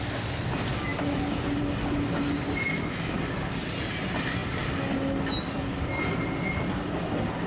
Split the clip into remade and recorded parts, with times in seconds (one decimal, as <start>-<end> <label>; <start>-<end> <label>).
0.0-2.7 recorded; 2.7-3.2 remade; 3.2-7.5 recorded